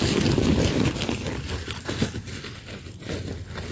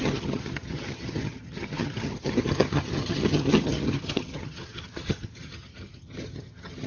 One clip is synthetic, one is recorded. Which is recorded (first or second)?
first